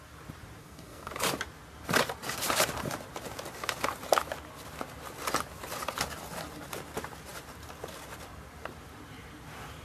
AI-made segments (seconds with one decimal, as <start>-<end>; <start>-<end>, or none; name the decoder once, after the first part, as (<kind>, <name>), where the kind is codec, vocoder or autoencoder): 0.6-1.1 (codec, SNAC)